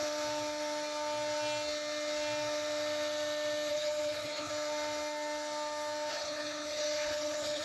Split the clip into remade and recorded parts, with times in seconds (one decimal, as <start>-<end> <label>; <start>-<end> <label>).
0.0-3.7 recorded; 3.7-4.5 remade; 4.5-6.1 recorded; 6.1-7.6 remade